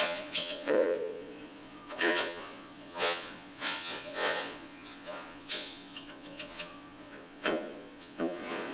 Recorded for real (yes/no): no